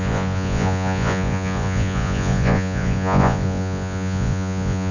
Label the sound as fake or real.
fake